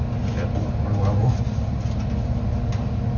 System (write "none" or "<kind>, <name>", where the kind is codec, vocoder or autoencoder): none